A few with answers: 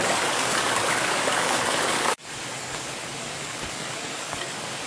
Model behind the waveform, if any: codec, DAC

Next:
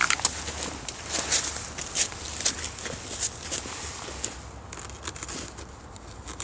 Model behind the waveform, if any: none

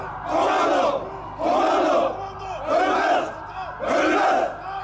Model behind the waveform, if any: none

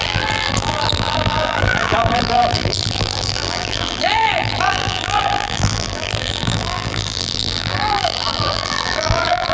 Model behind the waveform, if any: vocoder, BigVGAN v2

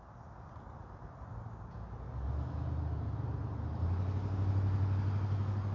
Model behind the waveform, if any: none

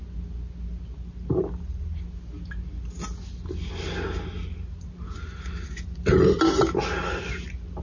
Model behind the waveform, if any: none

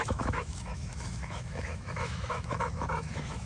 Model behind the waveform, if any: autoencoder, DAC-VAE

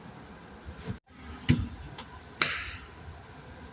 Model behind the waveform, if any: none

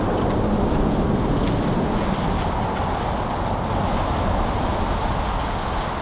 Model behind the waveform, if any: none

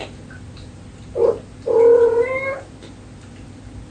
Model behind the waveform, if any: none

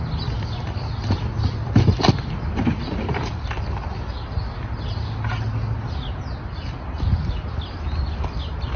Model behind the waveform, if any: none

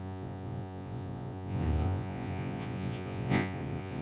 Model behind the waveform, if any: vocoder, Vocos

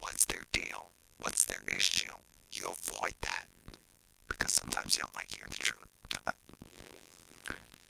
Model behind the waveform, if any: vocoder, BigVGAN v2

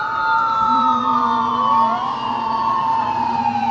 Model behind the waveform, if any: vocoder, BigVGAN v2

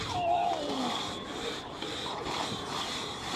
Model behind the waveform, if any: vocoder, BigVGAN v2